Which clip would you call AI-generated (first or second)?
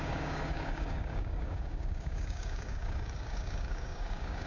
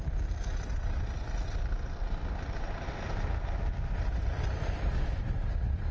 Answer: first